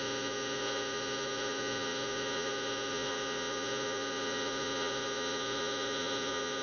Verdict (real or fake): fake